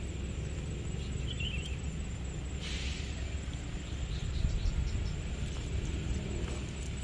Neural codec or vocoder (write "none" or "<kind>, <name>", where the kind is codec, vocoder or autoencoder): none